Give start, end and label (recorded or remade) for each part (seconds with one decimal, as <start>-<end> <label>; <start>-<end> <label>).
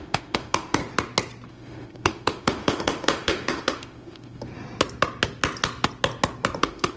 0.0-0.8 remade; 0.8-1.5 recorded; 1.5-4.5 remade; 4.5-6.6 recorded; 6.6-7.0 remade